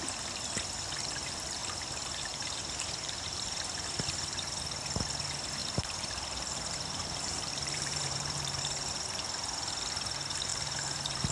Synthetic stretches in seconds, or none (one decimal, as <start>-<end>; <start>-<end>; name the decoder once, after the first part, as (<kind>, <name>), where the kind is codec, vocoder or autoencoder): 1.6-3.6 (vocoder, BigVGAN v2); 5.6-8.6; 10.5-11.3